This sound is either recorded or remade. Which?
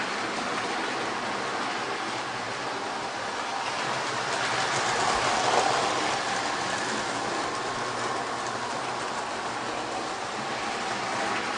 recorded